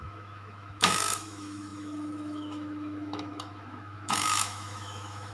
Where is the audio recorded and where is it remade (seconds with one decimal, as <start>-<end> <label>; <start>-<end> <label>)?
0.0-5.3 remade